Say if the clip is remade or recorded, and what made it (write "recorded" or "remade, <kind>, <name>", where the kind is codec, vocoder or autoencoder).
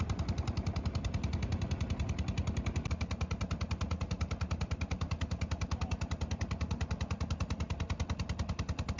recorded